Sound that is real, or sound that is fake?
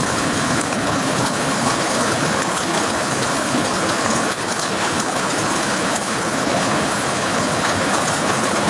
fake